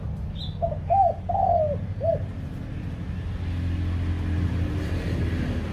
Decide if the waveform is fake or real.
real